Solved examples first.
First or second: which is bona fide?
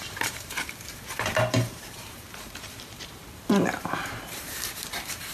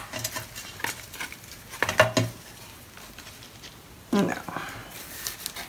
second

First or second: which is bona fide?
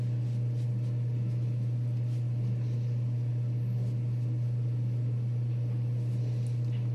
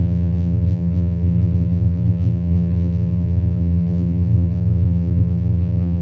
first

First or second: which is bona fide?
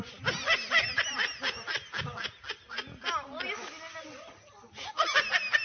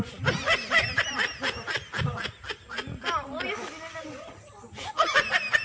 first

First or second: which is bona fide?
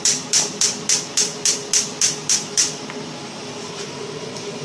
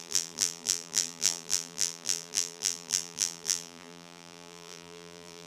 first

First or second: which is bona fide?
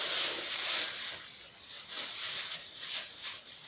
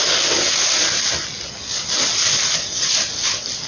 second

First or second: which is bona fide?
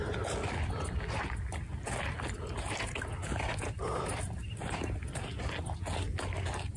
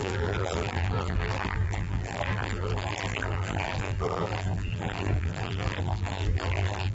first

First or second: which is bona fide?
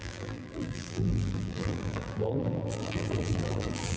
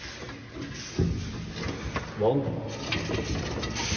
second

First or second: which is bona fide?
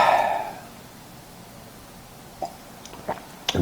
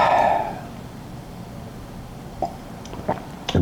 first